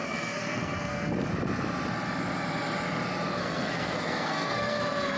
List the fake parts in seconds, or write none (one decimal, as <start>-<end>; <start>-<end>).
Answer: 0.0-1.1; 3.4-5.2